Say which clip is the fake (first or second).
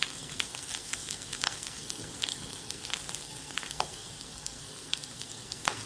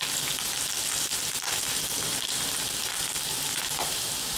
first